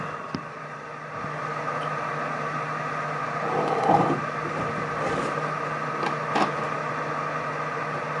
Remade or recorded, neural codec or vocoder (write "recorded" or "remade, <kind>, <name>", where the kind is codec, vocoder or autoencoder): recorded